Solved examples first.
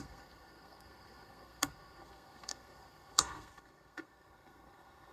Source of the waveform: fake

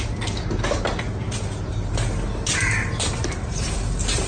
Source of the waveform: real